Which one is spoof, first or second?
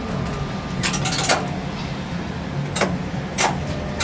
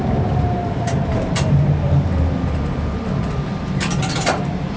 second